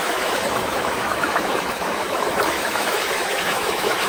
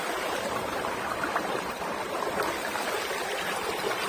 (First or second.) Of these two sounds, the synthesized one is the first